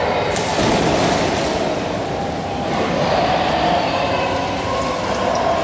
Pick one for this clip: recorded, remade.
recorded